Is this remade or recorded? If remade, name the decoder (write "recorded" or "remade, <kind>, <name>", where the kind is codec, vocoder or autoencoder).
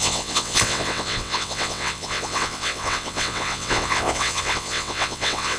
remade, vocoder, WaveNeXt